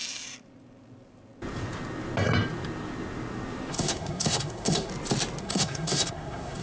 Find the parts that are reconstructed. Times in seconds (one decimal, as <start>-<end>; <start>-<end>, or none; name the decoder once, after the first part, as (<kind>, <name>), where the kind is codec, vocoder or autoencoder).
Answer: 3.7-4.9 (codec, SNAC); 5.4-6.6